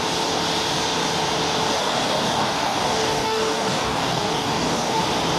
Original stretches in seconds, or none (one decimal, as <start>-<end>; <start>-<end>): 0.0-1.8; 5.0-5.4